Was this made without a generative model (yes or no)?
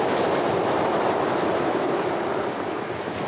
yes